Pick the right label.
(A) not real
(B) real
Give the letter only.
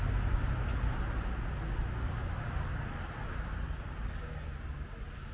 B